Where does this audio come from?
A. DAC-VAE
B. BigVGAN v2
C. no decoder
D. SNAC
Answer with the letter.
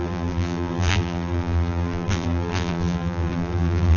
B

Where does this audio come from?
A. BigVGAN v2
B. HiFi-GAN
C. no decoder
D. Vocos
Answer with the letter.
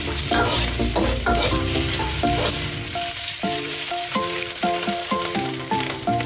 A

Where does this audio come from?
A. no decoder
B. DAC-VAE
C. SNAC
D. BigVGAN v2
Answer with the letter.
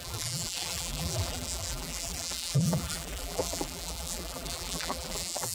D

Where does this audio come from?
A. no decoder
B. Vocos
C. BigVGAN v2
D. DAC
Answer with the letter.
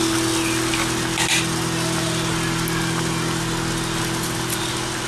A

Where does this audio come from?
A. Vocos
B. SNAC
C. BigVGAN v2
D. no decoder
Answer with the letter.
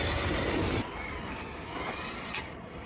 D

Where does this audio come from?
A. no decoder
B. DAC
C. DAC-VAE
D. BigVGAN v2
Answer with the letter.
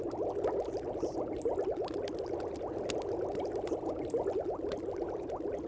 A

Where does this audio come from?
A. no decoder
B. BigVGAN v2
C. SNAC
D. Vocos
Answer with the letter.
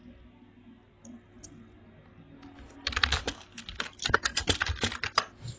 A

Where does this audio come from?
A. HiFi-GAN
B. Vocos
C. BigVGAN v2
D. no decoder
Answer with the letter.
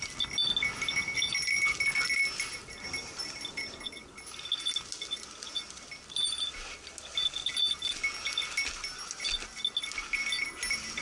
D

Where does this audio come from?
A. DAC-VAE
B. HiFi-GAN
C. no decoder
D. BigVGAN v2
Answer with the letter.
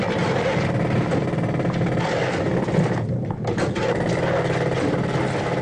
C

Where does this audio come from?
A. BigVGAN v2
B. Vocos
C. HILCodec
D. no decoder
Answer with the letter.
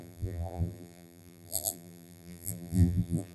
A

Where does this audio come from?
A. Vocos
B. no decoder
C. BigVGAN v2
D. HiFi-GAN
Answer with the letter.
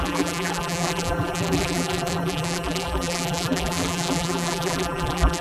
C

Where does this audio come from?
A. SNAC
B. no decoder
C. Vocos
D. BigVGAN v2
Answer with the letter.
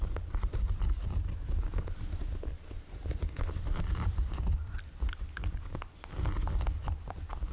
D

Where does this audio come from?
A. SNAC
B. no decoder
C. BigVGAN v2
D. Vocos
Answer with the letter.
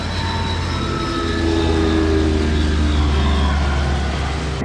B